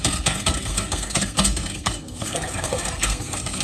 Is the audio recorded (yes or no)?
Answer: no